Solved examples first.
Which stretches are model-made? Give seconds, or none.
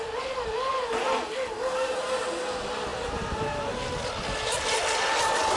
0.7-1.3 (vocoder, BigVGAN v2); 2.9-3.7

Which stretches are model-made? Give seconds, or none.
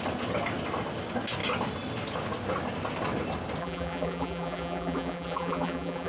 3.6-6.1 (vocoder, BigVGAN v2)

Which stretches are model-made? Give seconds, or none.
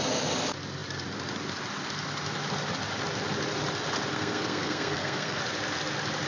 4.1-5.4 (codec, SNAC)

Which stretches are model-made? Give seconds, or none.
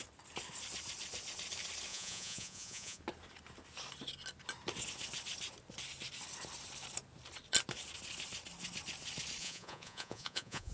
1.9-3.0 (vocoder, Vocos); 9.4-10.7